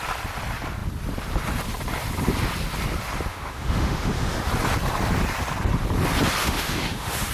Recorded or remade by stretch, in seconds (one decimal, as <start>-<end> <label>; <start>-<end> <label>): 0.0-3.3 recorded; 3.3-4.5 remade; 4.5-6.4 recorded; 6.4-7.3 remade